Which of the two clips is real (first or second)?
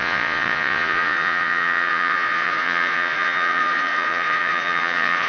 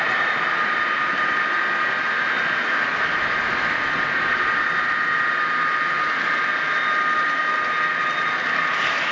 second